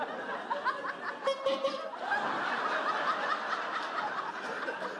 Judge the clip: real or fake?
real